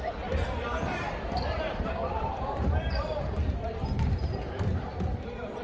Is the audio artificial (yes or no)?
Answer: yes